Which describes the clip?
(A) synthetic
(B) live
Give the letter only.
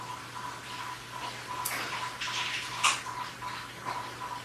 B